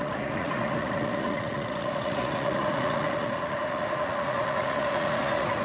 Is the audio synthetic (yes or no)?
yes